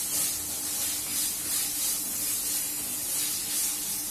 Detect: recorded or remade recorded